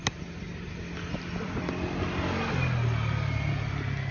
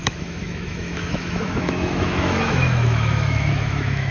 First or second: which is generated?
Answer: second